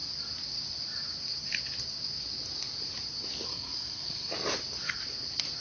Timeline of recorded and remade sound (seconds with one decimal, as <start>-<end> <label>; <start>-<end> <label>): 0.0-3.5 recorded; 3.5-4.3 remade; 4.3-5.6 recorded

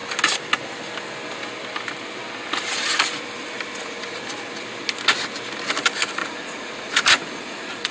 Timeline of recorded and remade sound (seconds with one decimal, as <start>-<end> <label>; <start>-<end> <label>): 0.0-6.2 recorded; 6.2-7.9 remade

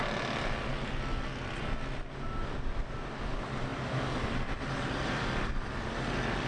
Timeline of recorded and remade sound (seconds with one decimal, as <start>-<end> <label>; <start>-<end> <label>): 0.0-6.5 recorded

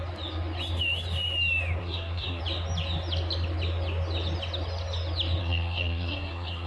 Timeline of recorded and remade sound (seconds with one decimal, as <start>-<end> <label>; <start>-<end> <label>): 0.0-1.8 recorded; 1.8-2.4 remade; 2.4-5.4 recorded; 5.4-6.7 remade

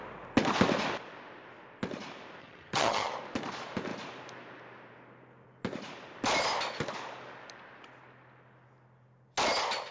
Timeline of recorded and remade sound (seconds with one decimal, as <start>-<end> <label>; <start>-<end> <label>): 0.0-2.4 recorded; 2.4-3.1 remade; 3.1-9.9 recorded

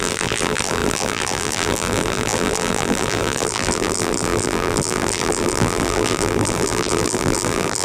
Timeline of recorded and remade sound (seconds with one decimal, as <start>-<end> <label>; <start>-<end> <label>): 0.0-7.8 remade

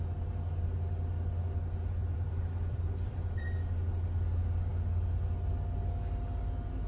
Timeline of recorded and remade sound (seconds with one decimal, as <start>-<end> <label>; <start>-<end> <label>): 0.0-2.0 recorded; 2.0-3.9 remade; 3.9-6.9 recorded

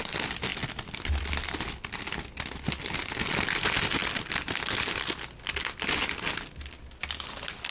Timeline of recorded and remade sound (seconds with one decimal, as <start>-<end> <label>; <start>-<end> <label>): 0.0-7.7 recorded